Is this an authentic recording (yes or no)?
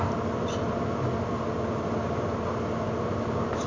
yes